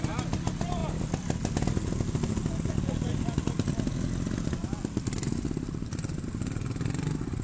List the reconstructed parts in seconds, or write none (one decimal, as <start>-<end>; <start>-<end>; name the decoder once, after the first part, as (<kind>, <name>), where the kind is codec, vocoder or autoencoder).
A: none